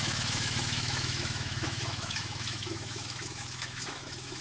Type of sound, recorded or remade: remade